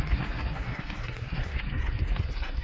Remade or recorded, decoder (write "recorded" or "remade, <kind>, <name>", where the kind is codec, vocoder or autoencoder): remade, codec, SNAC